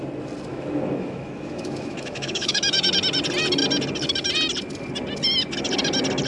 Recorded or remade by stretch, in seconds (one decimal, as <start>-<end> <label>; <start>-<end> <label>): 0.0-0.5 recorded; 0.5-2.9 remade; 2.9-6.3 recorded

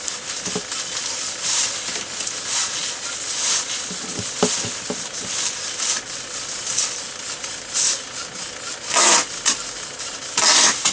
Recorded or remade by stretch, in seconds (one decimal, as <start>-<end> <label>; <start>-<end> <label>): 0.0-10.9 recorded

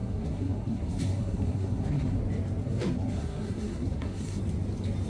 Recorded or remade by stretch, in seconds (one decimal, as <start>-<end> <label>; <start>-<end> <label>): 0.0-2.2 remade; 2.2-2.6 recorded; 2.6-4.4 remade; 4.4-5.1 recorded

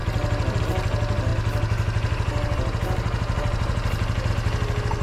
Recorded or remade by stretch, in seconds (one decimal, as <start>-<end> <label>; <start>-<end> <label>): 0.0-5.0 recorded

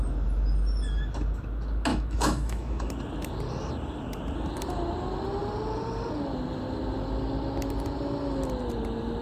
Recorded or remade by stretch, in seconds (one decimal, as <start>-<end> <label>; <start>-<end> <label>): 0.0-1.9 recorded; 1.9-2.9 remade; 2.9-9.2 recorded